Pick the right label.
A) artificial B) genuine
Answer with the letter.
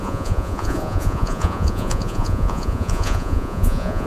A